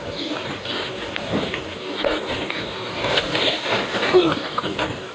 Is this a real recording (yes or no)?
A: no